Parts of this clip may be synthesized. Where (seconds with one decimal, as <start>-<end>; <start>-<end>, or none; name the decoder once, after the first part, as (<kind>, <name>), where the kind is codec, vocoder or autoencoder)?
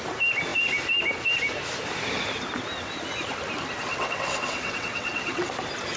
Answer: 3.9-5.5 (vocoder, WaveNeXt)